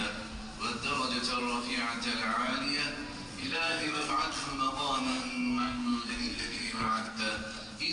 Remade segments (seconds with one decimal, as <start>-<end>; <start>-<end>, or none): 3.4-4.1; 5.1-7.2